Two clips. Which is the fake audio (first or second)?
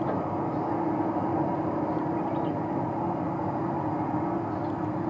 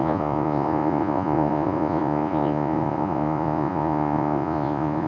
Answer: second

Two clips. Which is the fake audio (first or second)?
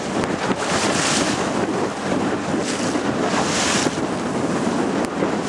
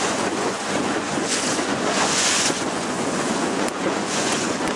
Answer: second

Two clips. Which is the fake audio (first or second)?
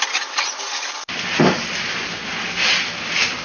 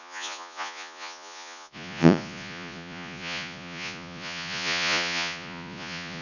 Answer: second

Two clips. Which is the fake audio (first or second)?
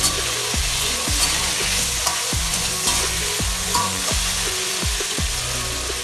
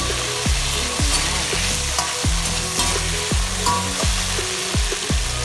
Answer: first